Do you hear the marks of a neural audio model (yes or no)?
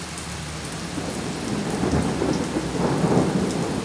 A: no